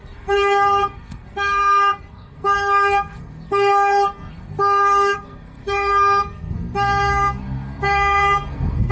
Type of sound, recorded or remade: remade